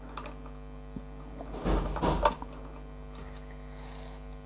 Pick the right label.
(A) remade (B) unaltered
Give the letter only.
B